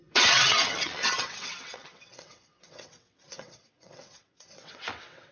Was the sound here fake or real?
fake